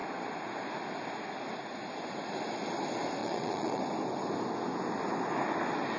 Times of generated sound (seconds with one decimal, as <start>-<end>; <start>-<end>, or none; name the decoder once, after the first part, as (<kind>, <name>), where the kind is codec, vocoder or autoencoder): 3.2-3.8 (vocoder, Vocos)